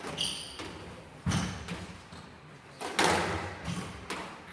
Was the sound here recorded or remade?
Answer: recorded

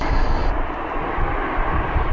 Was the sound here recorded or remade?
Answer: recorded